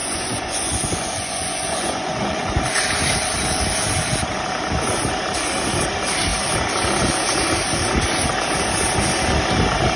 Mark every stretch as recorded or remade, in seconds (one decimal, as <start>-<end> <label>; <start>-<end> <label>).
0.0-2.6 remade; 2.6-10.0 recorded